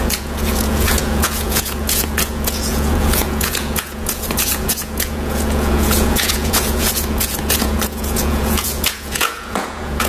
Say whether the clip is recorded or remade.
remade